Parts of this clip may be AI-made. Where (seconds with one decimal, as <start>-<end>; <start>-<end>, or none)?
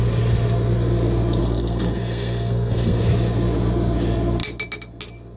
1.4-3.0